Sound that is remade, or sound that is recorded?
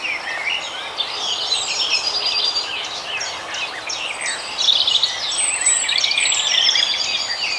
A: recorded